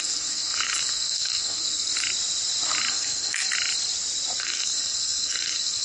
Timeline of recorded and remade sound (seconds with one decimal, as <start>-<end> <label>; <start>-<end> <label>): 0.0-1.9 remade; 1.9-2.9 recorded; 2.9-3.4 remade; 3.4-4.4 recorded; 4.4-5.8 remade